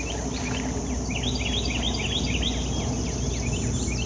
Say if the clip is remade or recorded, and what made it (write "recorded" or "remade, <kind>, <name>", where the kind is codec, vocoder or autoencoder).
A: recorded